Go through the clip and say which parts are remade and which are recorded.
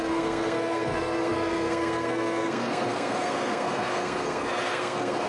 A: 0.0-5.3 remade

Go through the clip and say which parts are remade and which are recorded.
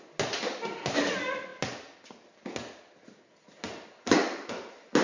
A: 0.0-5.0 recorded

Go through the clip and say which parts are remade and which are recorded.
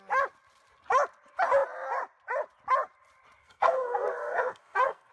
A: 0.0-3.4 recorded; 3.4-5.1 remade